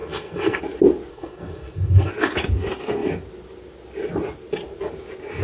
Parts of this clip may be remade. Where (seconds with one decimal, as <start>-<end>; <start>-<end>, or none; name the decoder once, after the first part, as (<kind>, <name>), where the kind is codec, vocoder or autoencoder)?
0.0-0.6 (codec, SNAC); 1.1-2.1